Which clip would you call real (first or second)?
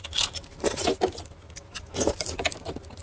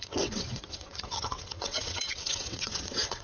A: first